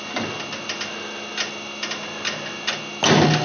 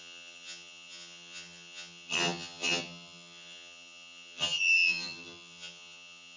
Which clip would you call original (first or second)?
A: first